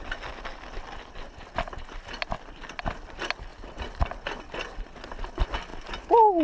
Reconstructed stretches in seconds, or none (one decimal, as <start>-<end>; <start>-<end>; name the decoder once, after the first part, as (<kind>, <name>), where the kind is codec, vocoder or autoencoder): none